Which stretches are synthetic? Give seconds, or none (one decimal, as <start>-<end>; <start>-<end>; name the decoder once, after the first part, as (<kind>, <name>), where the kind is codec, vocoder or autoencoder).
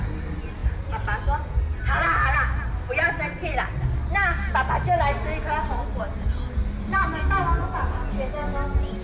none